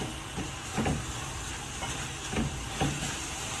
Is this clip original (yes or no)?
yes